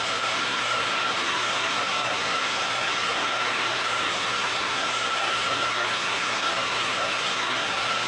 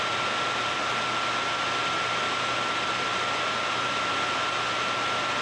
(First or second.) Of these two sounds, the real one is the second